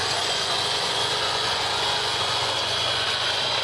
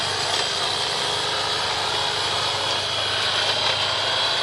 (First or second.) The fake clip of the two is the first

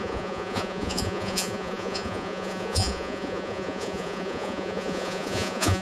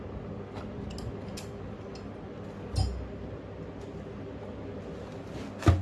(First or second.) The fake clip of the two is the first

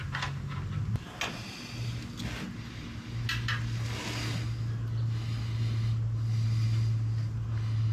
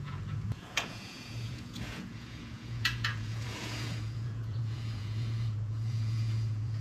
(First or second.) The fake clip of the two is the second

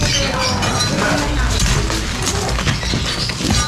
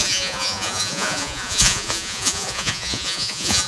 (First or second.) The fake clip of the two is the second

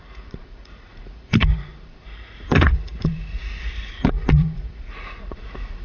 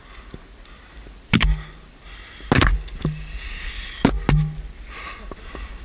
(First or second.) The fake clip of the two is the first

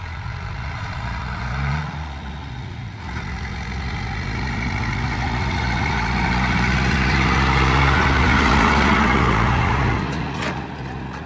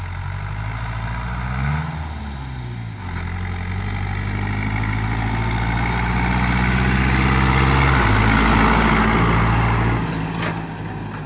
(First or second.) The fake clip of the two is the first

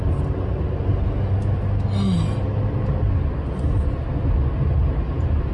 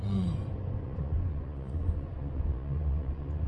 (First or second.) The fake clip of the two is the second